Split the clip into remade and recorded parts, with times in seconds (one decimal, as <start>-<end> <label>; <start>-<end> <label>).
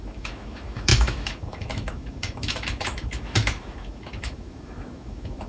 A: 0.0-5.5 remade